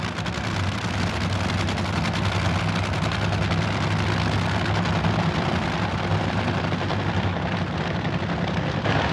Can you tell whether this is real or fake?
real